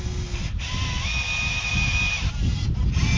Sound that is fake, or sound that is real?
real